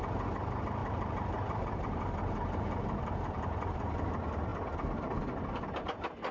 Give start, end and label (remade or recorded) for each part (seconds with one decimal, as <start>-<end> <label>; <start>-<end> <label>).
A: 0.0-0.8 recorded; 0.8-4.1 remade; 4.1-6.3 recorded

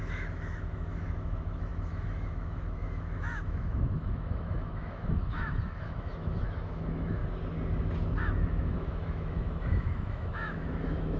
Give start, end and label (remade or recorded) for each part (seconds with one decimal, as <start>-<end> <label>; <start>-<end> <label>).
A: 0.0-7.2 remade; 7.2-8.2 recorded; 8.2-11.2 remade

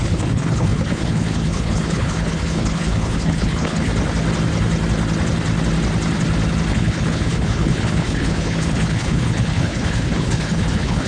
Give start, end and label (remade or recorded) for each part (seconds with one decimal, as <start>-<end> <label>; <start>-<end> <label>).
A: 0.0-3.9 remade; 3.9-6.7 recorded; 6.7-11.1 remade

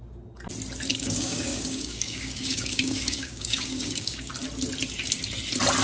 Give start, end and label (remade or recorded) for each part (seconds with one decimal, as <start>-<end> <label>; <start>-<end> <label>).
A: 0.0-0.9 recorded; 0.9-4.3 remade; 4.3-5.8 recorded